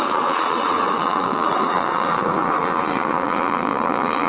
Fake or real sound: fake